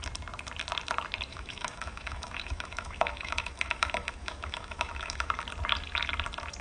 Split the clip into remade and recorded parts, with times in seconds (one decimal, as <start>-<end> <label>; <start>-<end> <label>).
0.0-1.3 recorded; 1.3-5.3 remade; 5.3-6.6 recorded